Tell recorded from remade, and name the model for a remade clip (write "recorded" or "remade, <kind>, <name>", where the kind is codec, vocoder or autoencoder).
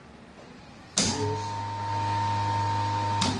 recorded